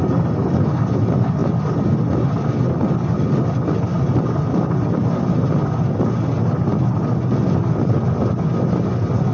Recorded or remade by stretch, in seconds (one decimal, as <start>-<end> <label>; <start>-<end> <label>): 0.0-9.3 recorded